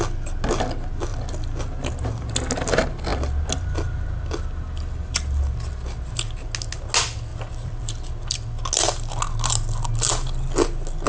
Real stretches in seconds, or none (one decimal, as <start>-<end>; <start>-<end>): 0.0-7.3; 7.9-11.1